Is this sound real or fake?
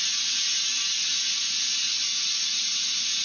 real